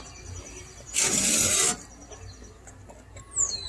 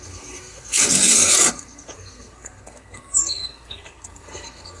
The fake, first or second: second